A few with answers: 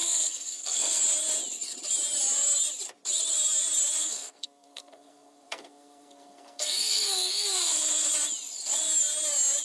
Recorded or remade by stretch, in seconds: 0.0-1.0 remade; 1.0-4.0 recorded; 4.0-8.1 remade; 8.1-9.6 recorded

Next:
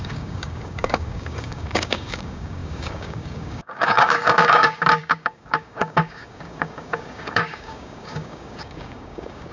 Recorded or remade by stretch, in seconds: 0.0-9.5 remade